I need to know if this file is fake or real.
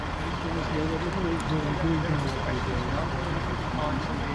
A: real